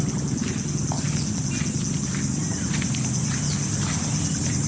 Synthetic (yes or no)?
no